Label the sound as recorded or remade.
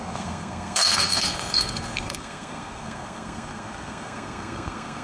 remade